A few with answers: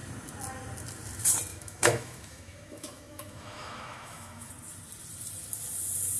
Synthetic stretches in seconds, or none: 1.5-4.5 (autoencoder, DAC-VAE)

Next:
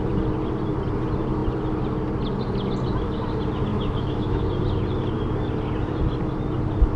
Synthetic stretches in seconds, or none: 3.7-4.5 (autoencoder, DAC-VAE)

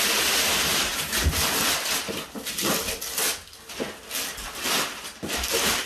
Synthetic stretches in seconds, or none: none

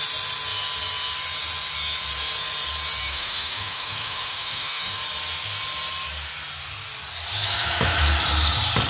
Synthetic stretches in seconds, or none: 3.0-5.0 (autoencoder, DAC-VAE); 7.4-8.0

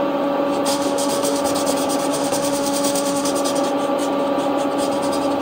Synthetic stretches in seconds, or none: 0.7-1.4 (autoencoder, DAC-VAE); 2.1-3.3

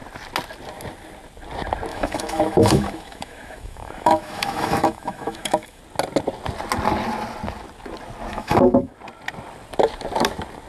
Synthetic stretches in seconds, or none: 1.9-5.8 (autoencoder, DAC-VAE); 8.3-8.9

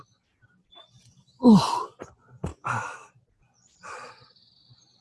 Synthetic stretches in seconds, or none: 2.5-3.1 (autoencoder, DAC-VAE)

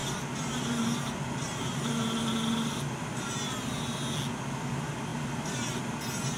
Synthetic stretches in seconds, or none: none